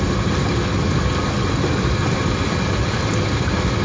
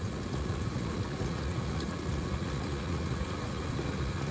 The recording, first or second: first